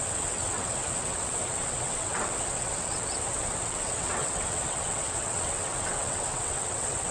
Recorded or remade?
remade